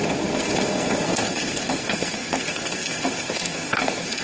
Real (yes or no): no